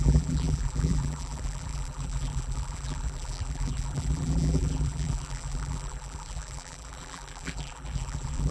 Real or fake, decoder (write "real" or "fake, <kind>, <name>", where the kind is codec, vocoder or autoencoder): fake, vocoder, BigVGAN v2